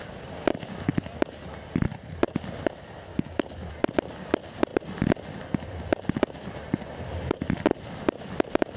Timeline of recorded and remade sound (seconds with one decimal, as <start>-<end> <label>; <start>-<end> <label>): 0.0-3.1 recorded; 3.1-3.7 remade; 3.7-8.8 recorded